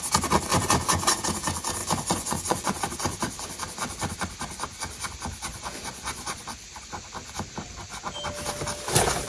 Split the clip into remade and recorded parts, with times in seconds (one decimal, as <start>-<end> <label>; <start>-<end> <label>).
0.0-0.5 recorded; 0.5-1.2 remade; 1.2-1.8 recorded; 1.8-2.8 remade; 2.8-5.5 recorded; 5.5-6.4 remade; 6.4-9.3 recorded